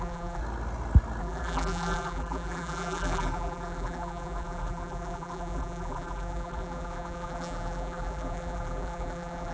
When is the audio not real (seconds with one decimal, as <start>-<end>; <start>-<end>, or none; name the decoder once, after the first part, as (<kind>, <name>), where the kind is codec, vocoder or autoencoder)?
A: 0.0-0.4 (vocoder, BigVGAN v2); 1.2-9.5